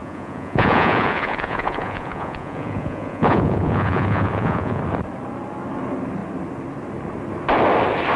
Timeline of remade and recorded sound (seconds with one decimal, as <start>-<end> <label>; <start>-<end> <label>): 0.0-4.8 remade; 4.8-8.2 recorded